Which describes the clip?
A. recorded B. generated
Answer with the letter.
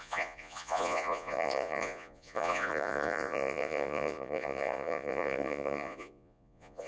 B